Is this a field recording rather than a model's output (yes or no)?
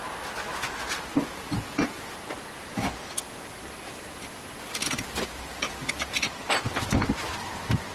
yes